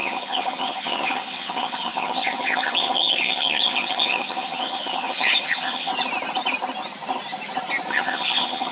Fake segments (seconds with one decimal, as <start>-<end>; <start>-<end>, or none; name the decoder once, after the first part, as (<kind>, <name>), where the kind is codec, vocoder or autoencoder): 0.0-5.9 (vocoder, HiFi-GAN); 7.9-8.7